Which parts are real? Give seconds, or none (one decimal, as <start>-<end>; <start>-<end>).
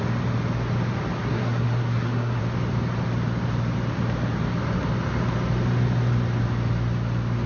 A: 0.0-1.2; 2.4-7.5